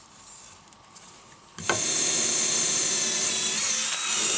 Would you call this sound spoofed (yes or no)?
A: no